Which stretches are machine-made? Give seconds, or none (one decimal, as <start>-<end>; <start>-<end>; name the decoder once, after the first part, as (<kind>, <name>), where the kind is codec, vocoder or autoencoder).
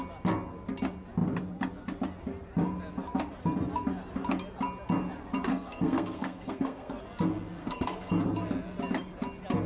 5.5-7.0 (codec, SNAC); 7.6-8.1